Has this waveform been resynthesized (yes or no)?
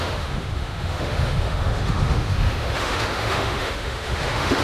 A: yes